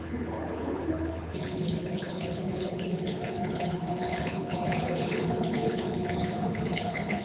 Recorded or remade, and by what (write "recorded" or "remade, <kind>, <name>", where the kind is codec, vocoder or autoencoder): remade, codec, HILCodec